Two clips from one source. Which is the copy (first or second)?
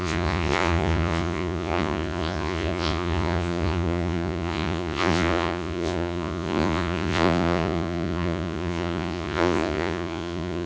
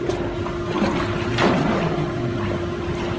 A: first